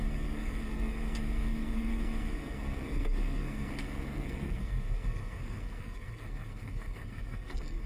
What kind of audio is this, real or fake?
fake